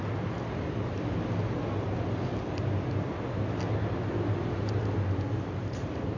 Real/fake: real